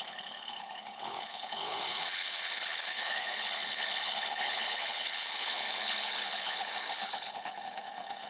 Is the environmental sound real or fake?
fake